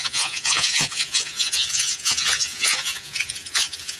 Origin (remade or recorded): remade